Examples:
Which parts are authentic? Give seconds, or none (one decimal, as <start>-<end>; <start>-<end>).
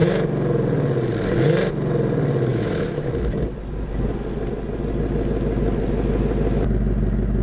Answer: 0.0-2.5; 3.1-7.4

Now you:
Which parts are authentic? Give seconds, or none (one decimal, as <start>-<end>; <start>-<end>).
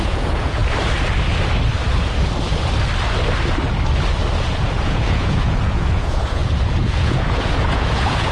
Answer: 0.6-4.4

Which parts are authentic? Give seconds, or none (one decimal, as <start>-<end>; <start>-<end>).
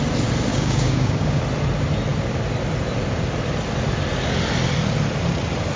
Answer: 0.0-0.5; 1.4-5.8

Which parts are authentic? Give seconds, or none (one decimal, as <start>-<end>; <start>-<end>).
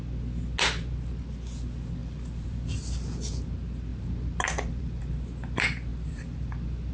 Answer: 0.0-2.0; 2.9-3.9; 5.0-5.9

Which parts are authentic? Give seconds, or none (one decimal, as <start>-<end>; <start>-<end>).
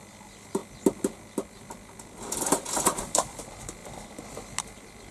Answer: 0.0-5.1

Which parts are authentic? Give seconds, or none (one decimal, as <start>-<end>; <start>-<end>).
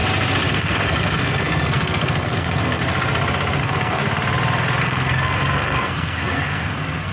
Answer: 0.0-0.5; 2.8-3.6; 4.0-4.8